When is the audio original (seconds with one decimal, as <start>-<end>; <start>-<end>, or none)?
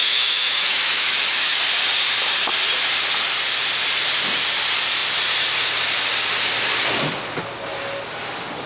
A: 1.6-8.7